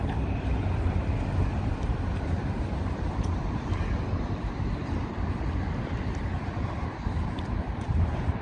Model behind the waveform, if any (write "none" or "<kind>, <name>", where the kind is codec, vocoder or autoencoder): none